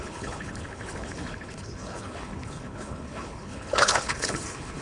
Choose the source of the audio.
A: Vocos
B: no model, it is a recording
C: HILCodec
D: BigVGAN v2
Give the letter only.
C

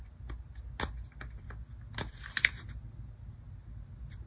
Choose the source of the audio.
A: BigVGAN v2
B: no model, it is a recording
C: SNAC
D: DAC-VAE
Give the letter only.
B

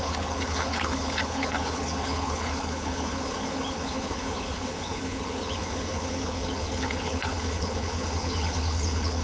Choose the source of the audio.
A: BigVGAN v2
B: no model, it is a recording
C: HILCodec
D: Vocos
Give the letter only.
C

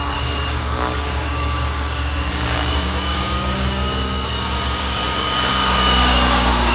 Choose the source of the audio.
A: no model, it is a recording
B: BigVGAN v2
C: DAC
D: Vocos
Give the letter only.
C